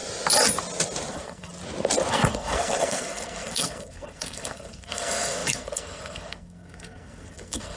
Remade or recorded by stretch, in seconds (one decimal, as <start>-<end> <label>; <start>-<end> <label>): 0.0-1.1 recorded; 1.1-1.5 remade; 1.5-2.1 recorded; 2.1-7.8 remade

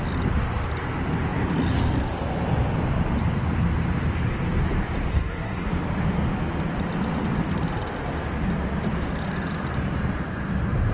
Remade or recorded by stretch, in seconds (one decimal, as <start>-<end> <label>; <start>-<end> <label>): 0.0-5.1 recorded; 5.1-5.7 remade; 5.7-10.9 recorded

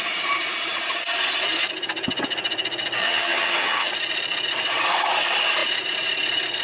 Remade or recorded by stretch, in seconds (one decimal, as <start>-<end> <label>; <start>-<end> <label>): 0.0-3.0 recorded; 3.0-3.9 remade; 3.9-6.6 recorded

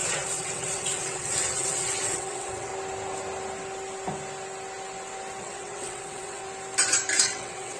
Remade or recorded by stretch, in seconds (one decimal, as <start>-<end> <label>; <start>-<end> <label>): 0.0-2.7 remade; 2.7-5.4 recorded; 5.4-6.4 remade; 6.4-7.2 recorded; 7.2-7.8 remade

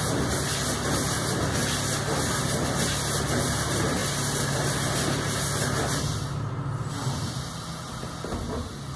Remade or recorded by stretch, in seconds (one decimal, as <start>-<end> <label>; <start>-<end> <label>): 0.0-9.0 recorded